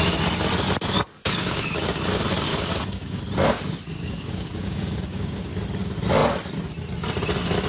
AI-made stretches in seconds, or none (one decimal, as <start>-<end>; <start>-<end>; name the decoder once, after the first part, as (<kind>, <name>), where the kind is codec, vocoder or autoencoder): 1.4-2.0 (codec, DAC); 2.5-3.2; 3.9-5.6